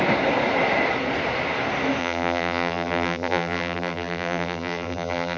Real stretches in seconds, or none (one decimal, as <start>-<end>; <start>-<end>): 0.0-2.0